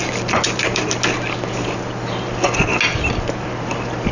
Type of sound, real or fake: real